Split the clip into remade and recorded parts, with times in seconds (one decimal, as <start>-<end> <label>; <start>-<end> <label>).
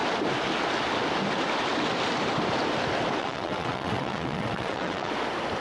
0.0-3.2 recorded; 3.2-5.1 remade; 5.1-5.6 recorded